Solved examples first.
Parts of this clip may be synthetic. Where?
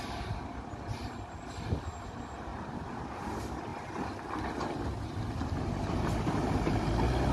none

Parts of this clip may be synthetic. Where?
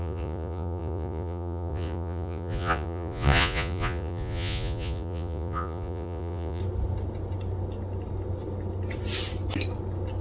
0.0-6.6 (vocoder, Vocos)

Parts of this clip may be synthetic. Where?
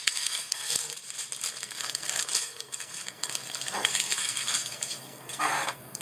0.0-0.9 (codec, SNAC); 1.6-6.0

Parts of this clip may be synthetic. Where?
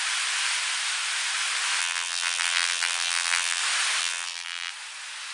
1.8-3.6 (vocoder, BigVGAN v2); 4.0-4.7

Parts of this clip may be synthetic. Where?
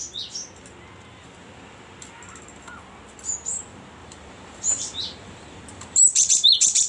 4.0-6.9 (vocoder, BigVGAN v2)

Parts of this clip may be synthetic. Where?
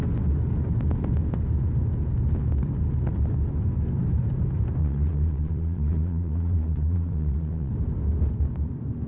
4.8-7.7 (vocoder, Vocos)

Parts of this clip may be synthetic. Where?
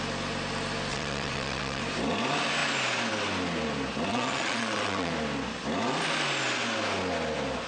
0.9-1.8 (vocoder, WaveNeXt); 4.1-5.1